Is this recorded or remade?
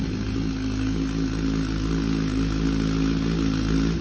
recorded